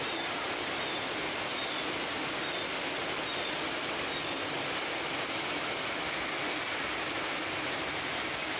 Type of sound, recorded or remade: recorded